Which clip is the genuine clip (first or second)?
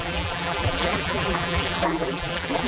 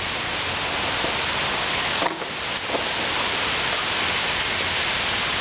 second